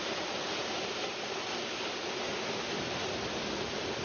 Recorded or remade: recorded